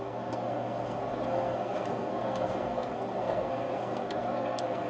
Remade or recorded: remade